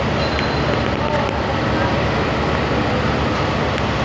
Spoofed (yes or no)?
no